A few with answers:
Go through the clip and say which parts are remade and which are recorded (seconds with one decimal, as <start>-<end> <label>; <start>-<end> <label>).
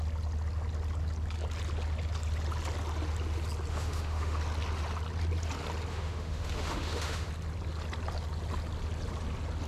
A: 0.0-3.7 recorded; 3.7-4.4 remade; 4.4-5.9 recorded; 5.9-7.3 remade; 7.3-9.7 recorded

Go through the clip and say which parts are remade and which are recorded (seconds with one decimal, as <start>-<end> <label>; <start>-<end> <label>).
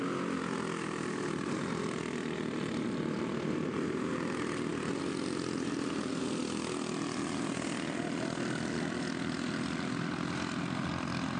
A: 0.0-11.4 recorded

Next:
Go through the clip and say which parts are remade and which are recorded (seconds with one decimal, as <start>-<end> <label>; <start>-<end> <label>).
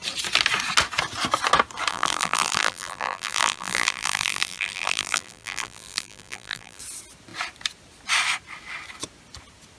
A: 0.0-1.9 recorded; 1.9-6.8 remade; 6.8-9.8 recorded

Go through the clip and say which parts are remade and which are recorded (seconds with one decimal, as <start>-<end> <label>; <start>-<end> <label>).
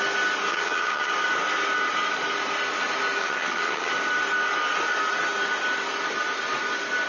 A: 0.0-0.5 recorded; 0.5-1.1 remade; 1.1-3.2 recorded; 3.2-3.9 remade; 3.9-7.1 recorded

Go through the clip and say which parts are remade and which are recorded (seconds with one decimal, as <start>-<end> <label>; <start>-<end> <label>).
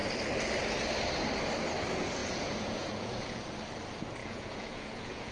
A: 0.0-2.2 recorded; 2.2-3.4 remade; 3.4-4.2 recorded; 4.2-5.3 remade